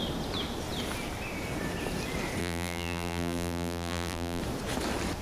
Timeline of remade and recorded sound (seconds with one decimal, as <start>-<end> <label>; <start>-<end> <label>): 0.0-2.4 recorded; 2.4-4.4 remade; 4.4-5.2 recorded